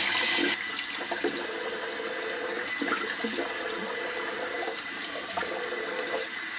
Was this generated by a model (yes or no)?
no